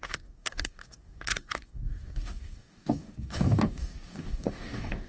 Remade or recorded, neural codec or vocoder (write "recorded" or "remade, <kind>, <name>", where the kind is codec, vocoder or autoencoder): remade, codec, DAC